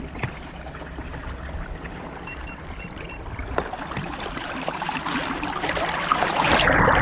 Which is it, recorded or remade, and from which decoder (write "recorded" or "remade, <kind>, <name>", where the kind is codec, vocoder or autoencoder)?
remade, vocoder, BigVGAN v2